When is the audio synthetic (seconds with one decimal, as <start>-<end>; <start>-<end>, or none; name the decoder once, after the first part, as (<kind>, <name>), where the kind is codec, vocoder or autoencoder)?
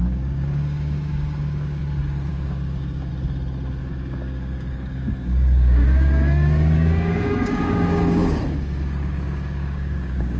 0.0-1.8 (codec, DAC); 2.3-3.1; 3.8-10.4